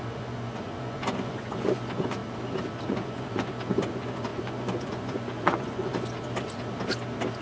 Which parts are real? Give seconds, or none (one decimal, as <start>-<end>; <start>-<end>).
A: 2.2-2.8; 5.9-7.4